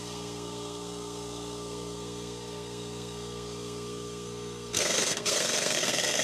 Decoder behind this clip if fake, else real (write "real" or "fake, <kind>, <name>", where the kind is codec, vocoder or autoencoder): fake, codec, SNAC